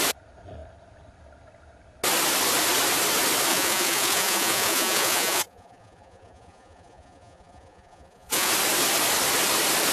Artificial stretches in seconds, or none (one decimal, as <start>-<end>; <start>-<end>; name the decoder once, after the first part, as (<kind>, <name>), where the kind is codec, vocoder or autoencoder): 3.5-8.5 (vocoder, Vocos)